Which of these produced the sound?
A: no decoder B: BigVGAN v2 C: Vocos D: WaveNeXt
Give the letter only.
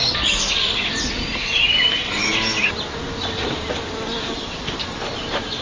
A